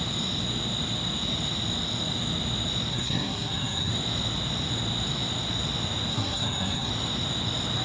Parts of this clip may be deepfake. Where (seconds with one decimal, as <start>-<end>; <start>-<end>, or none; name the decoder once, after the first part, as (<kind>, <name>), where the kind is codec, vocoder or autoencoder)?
2.9-3.9 (codec, SNAC); 6.1-6.9